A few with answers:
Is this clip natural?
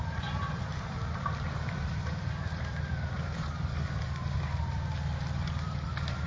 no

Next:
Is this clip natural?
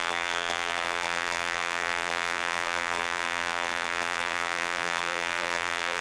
no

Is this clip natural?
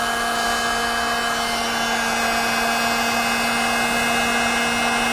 yes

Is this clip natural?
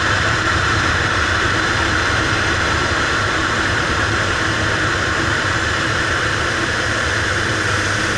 no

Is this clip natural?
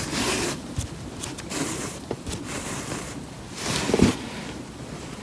no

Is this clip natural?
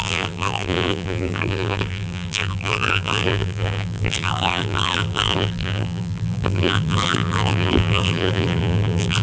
no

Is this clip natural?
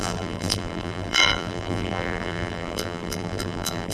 no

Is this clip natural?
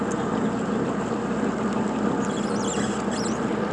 yes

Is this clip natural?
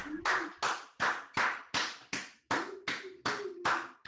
yes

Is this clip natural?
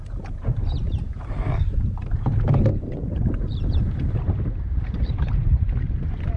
no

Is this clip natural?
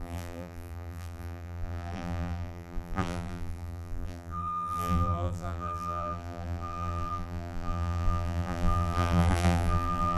no